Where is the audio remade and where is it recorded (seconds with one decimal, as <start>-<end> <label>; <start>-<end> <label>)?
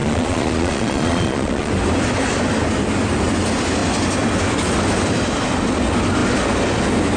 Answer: 0.0-1.7 remade; 1.7-7.2 recorded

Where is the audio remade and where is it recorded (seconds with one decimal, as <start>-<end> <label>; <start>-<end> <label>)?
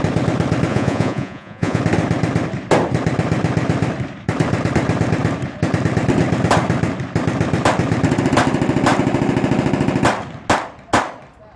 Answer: 0.0-0.7 recorded; 0.7-1.8 remade; 1.8-11.6 recorded